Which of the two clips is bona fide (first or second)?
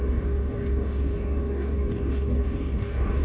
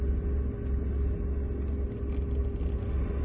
second